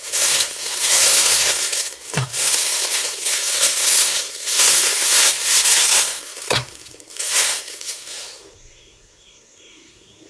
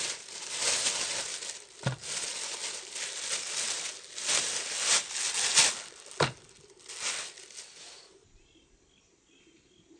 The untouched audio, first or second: second